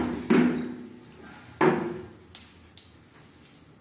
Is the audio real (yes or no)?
yes